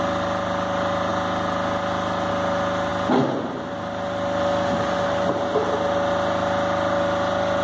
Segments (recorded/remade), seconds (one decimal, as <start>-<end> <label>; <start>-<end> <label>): 0.0-7.6 recorded